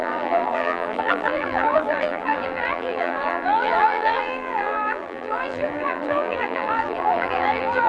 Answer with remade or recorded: remade